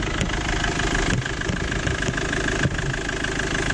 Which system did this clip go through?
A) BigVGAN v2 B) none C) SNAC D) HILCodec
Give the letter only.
B